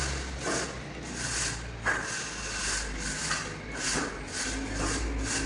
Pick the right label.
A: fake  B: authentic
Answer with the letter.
B